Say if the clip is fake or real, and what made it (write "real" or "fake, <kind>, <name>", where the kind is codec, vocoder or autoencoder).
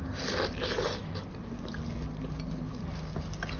real